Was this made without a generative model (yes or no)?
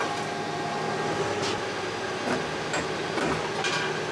yes